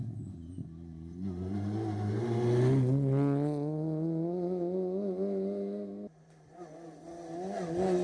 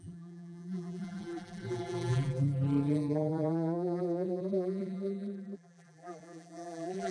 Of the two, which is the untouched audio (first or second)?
first